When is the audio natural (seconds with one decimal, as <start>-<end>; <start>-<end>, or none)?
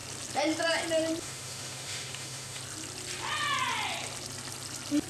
0.0-1.2; 2.6-5.1